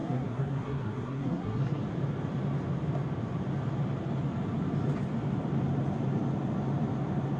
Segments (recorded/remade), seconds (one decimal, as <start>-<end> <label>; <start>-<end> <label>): 0.0-1.8 remade; 1.8-7.4 recorded